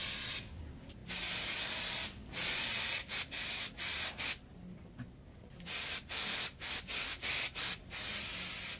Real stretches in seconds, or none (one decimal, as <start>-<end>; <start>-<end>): none